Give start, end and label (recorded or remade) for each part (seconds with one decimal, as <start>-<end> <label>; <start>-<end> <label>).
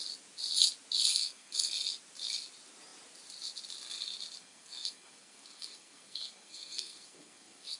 0.0-1.1 recorded; 1.1-1.7 remade; 1.7-4.4 recorded; 4.4-7.8 remade